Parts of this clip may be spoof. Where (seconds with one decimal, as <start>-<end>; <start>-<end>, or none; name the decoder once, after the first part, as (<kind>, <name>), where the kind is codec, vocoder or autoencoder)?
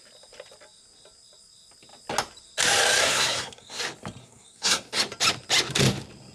3.0-3.8 (codec, SNAC); 4.2-5.0